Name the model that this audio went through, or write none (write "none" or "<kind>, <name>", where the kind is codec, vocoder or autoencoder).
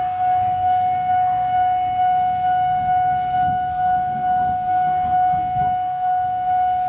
codec, SNAC